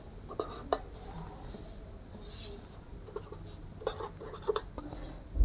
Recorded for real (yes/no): yes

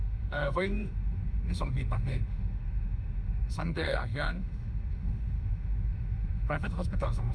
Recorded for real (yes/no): no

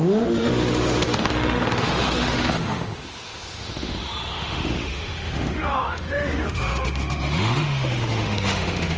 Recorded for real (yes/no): no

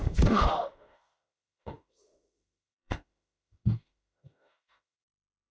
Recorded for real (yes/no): no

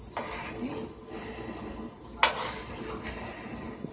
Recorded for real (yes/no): yes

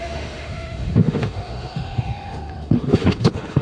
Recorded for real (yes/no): no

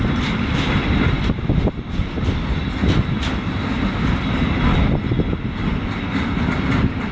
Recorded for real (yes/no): yes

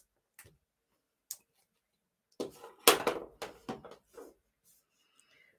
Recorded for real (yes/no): yes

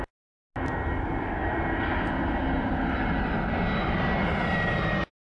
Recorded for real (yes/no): yes